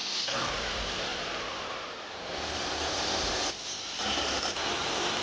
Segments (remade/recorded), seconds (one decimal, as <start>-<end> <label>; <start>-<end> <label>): 0.0-0.5 remade; 0.5-5.2 recorded